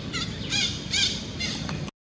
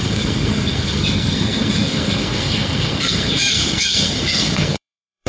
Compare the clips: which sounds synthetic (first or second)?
second